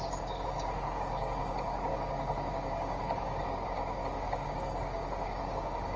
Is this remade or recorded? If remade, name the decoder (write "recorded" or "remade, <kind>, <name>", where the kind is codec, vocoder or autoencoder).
remade, codec, DAC